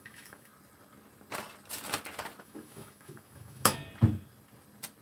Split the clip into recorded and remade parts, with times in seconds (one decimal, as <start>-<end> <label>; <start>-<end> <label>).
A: 0.0-0.5 remade; 0.5-2.4 recorded; 2.4-3.8 remade; 3.8-5.0 recorded